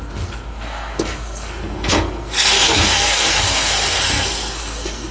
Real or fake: fake